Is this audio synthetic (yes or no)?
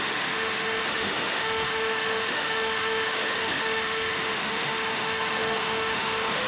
yes